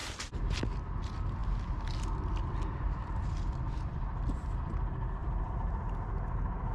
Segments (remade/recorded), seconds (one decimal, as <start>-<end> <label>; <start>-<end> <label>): 0.0-3.0 recorded; 3.0-4.4 remade; 4.4-6.7 recorded